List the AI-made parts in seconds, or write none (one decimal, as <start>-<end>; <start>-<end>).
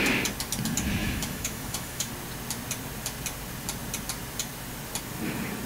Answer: 1.0-2.1